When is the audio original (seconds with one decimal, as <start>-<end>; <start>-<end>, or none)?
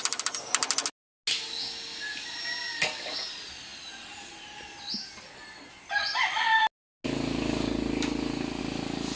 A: 0.0-9.2